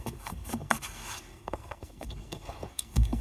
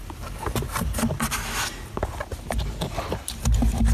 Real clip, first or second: second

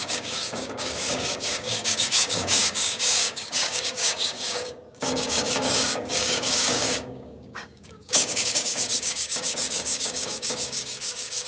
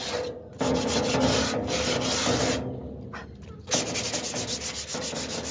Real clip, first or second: second